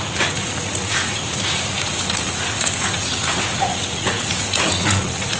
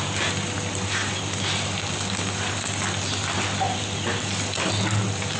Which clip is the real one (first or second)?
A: second